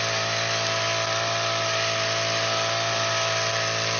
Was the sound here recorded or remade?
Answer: recorded